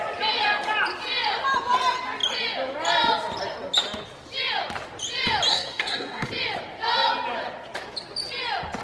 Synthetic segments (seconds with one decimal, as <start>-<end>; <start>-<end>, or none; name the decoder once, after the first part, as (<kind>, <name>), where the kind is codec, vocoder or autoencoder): 5.5-6.3 (codec, SNAC)